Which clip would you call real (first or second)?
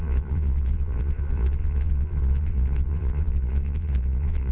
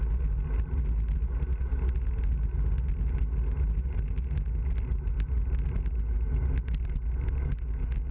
second